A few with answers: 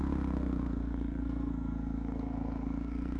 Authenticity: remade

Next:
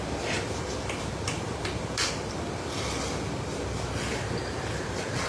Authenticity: recorded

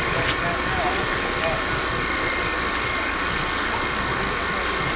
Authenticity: recorded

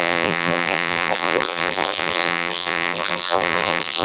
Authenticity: remade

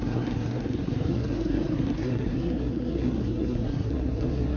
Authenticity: remade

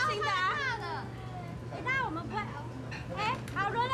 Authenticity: recorded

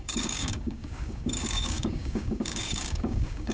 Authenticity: remade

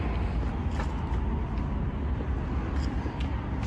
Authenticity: recorded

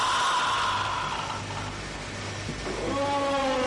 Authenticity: recorded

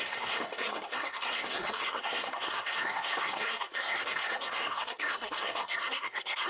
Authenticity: remade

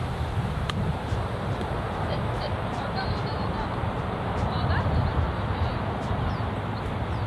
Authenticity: remade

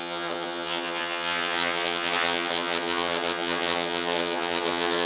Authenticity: remade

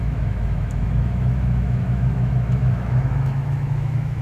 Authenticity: remade